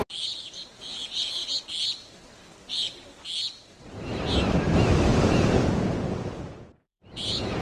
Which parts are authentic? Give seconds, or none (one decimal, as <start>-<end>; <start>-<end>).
0.0-5.1